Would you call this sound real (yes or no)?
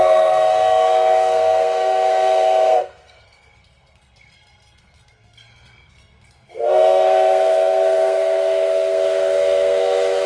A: no